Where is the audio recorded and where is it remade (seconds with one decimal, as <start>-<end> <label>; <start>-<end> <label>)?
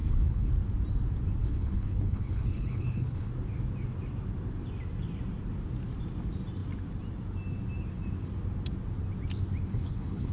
0.0-0.5 remade; 0.5-1.4 recorded; 1.4-3.3 remade; 3.3-9.7 recorded; 9.7-10.3 remade